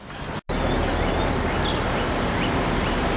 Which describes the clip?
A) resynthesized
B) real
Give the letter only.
B